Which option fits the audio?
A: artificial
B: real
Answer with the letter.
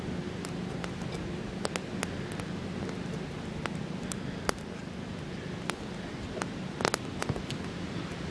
B